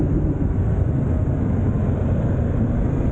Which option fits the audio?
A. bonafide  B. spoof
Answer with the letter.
A